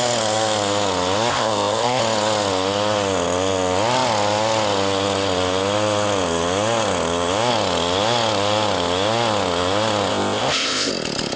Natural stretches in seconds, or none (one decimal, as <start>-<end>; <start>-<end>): 0.0-1.3; 2.0-10.1; 10.9-11.4